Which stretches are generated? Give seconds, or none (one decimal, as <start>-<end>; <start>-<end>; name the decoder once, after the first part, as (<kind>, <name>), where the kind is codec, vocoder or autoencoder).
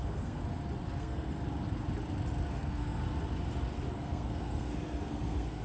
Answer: 0.0-0.4 (codec, SNAC); 1.0-1.4; 2.5-3.0; 3.9-5.6